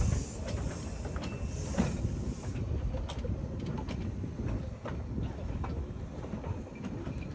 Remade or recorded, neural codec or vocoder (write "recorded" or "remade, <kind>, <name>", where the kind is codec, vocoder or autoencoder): recorded